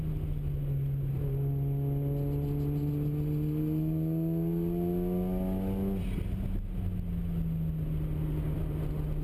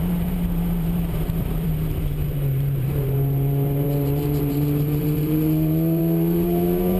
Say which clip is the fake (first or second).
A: second